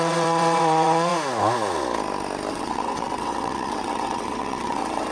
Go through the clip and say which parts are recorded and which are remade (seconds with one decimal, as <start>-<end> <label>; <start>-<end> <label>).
0.0-1.1 remade; 1.1-2.5 recorded; 2.5-5.1 remade